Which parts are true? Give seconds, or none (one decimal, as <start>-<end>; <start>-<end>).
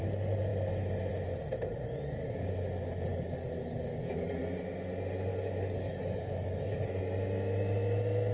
0.0-3.1; 4.4-5.3; 7.0-8.3